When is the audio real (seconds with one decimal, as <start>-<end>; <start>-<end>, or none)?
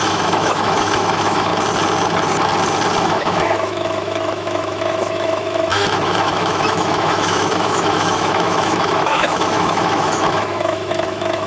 1.5-3.0